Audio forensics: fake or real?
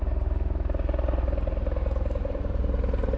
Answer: real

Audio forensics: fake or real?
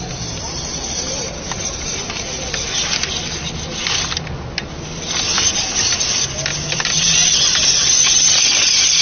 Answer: real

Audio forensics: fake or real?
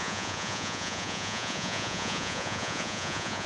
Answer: fake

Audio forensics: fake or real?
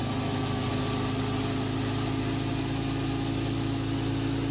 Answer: real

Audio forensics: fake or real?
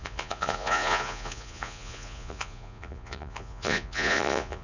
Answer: fake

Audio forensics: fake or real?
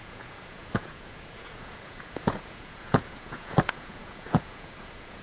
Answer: fake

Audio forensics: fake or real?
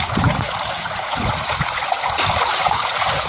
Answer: fake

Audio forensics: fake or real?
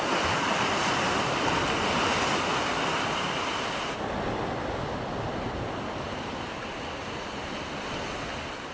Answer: real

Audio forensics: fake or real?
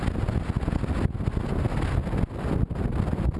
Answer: real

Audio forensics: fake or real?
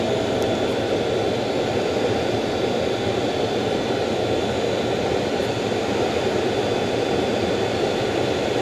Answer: real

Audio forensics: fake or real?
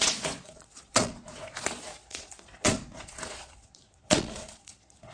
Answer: fake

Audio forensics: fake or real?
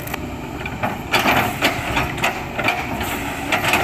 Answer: real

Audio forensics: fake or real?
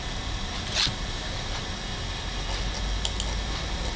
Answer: real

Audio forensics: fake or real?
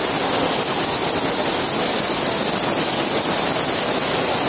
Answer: real